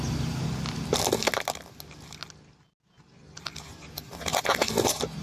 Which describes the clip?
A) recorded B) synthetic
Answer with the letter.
A